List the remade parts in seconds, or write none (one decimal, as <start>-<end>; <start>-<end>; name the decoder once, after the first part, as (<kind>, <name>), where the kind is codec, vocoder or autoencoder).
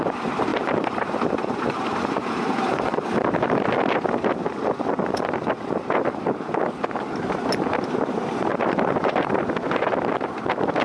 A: 0.5-3.6 (vocoder, BigVGAN v2); 8.5-9.2